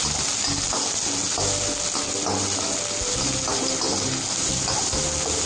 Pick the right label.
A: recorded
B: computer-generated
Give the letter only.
A